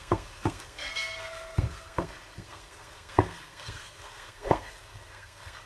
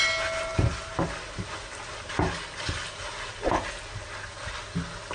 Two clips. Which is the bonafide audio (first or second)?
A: second